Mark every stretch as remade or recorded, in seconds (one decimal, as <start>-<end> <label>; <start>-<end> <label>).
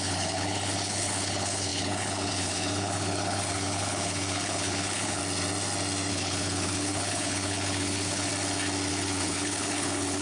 0.0-5.2 remade; 5.2-6.1 recorded; 6.1-8.3 remade; 8.3-8.9 recorded; 8.9-10.2 remade